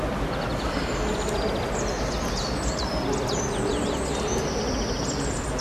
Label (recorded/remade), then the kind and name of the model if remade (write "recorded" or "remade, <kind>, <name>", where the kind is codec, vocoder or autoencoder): recorded